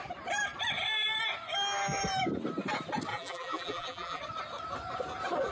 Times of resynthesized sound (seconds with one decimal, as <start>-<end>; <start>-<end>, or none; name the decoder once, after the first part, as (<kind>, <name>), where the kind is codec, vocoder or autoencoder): 3.1-4.2 (vocoder, BigVGAN v2)